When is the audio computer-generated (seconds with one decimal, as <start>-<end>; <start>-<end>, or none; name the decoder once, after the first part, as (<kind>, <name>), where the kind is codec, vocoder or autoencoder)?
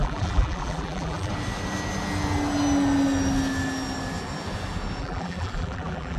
0.0-1.3 (vocoder, BigVGAN v2); 5.0-6.2